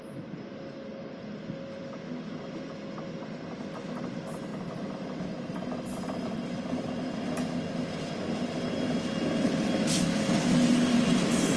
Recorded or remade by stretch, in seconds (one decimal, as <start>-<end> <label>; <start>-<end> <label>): 0.0-11.6 recorded